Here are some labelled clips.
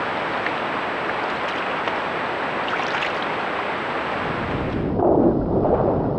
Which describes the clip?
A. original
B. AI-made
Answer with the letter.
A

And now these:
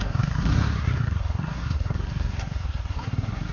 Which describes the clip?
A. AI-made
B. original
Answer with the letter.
A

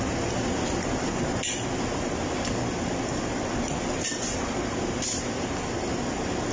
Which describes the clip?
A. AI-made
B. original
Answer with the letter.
B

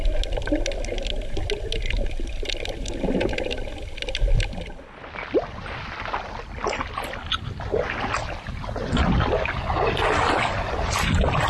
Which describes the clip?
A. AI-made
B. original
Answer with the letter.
B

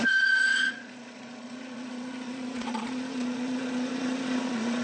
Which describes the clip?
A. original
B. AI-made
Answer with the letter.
B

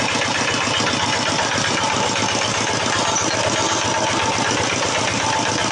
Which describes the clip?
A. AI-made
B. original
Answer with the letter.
B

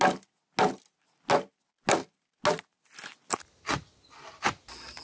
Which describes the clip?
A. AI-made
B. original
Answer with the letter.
B